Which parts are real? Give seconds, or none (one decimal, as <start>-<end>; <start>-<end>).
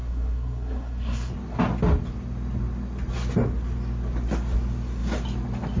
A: 1.3-5.8